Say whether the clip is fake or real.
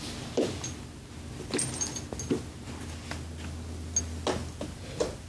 real